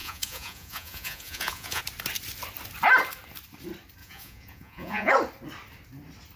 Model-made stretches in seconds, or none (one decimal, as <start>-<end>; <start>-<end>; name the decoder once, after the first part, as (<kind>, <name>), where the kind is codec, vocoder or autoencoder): 0.0-1.8 (vocoder, Vocos); 4.0-5.1